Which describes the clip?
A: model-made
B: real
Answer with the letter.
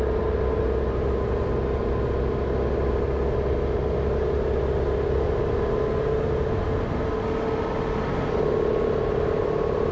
B